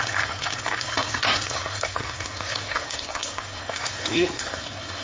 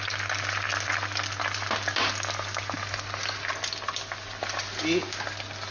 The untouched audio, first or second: second